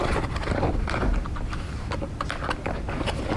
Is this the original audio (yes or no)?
no